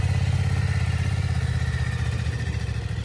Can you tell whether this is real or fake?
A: real